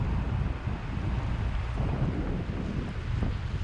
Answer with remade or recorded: recorded